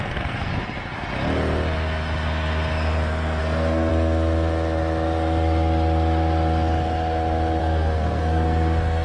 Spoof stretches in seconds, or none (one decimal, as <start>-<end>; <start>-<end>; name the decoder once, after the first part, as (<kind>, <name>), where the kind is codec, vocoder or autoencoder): 0.0-0.5 (codec, SNAC); 3.4-3.9; 7.6-9.0

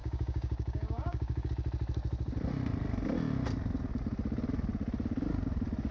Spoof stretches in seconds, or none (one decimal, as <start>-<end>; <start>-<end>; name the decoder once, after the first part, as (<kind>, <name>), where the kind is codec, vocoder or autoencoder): 0.0-1.5 (codec, DAC)